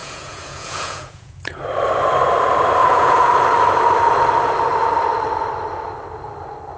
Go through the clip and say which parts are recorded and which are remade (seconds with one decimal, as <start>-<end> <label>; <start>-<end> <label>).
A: 0.0-1.6 remade; 1.6-2.8 recorded; 2.8-3.3 remade; 3.3-6.8 recorded